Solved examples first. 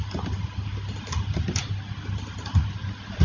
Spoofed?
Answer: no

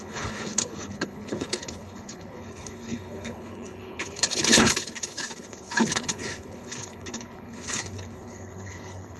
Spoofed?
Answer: yes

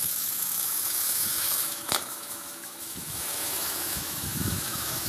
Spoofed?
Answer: yes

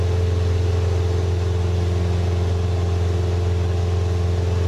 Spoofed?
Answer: no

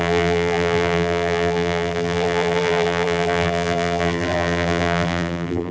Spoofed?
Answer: yes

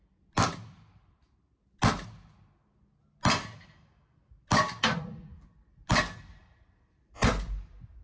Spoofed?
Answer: no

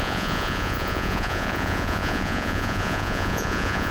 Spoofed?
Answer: yes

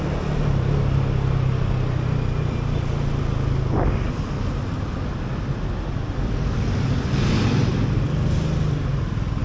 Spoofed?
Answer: no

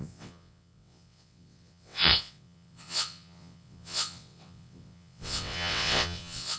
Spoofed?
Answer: yes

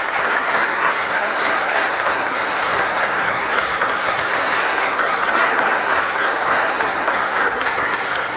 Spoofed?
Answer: yes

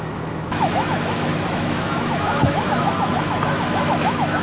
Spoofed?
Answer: yes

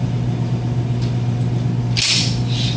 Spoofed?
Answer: no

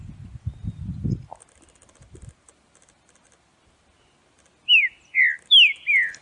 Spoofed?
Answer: no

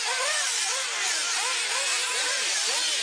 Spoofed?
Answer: no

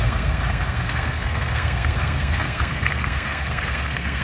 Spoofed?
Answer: yes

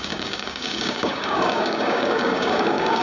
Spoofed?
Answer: yes